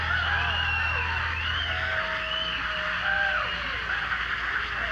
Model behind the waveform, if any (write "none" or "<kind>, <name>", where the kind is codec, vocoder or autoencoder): none